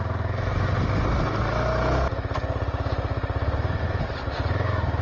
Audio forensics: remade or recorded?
recorded